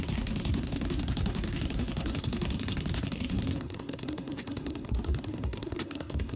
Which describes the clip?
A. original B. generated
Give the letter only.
B